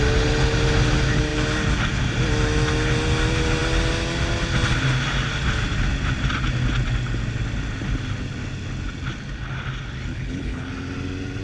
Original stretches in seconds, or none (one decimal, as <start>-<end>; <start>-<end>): 0.0-10.1; 10.7-11.4